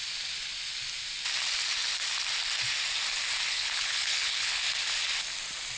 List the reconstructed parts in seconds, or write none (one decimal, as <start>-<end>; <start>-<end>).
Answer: 3.5-4.6

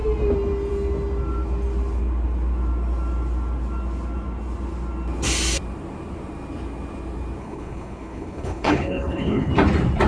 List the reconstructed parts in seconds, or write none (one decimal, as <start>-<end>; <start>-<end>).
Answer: 7.4-9.5

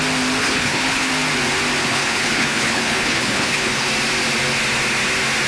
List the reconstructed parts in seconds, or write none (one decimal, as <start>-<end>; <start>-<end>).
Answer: 0.4-1.1; 1.8-3.9

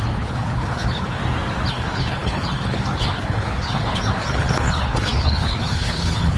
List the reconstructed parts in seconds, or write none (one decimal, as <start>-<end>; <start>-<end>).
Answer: 0.0-1.2; 1.7-6.4

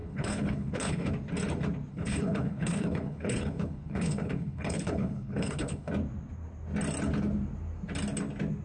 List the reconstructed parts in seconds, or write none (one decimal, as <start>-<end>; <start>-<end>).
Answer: 0.0-1.1; 1.9-5.9

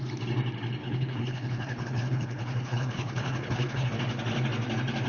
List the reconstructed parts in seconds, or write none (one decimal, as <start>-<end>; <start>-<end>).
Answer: 0.8-3.9

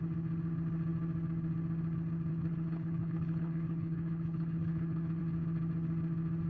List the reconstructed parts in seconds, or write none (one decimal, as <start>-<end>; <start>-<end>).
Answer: 2.3-5.2

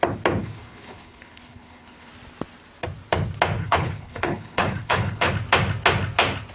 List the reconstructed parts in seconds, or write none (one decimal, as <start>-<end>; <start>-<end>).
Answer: 0.4-2.1; 3.6-5.3